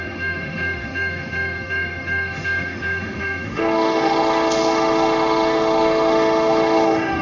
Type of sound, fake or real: fake